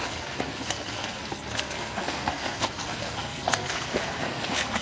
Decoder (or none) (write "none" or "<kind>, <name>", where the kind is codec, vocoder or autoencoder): codec, SNAC